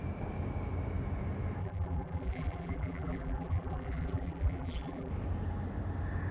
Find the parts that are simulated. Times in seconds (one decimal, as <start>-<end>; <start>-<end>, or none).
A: 1.6-5.1